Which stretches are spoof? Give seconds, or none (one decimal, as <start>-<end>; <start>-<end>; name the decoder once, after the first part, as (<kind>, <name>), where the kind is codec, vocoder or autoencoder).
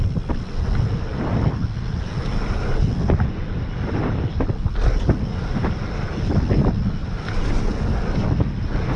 7.0-7.6 (vocoder, BigVGAN v2)